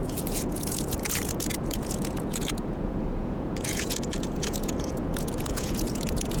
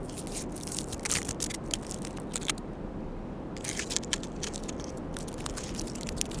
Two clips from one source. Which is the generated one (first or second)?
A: first